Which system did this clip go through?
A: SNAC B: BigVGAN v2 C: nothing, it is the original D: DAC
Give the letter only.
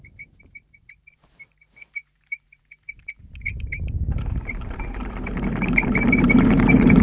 B